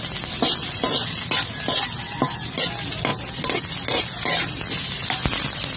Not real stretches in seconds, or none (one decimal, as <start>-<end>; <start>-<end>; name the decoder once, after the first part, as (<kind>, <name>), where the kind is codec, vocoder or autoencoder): none